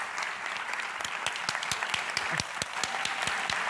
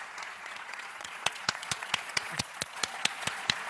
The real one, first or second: first